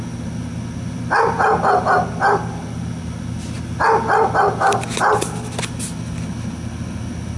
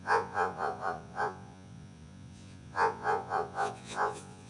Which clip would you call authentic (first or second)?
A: first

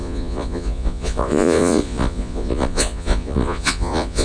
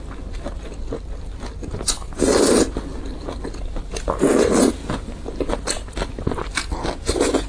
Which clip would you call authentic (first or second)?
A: second